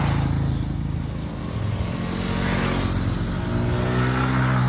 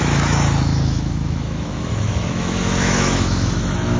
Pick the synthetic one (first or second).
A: second